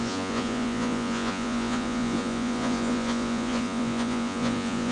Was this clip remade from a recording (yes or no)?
yes